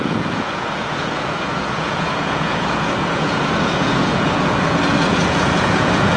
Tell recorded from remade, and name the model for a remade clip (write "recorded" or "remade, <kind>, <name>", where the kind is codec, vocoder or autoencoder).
remade, vocoder, Vocos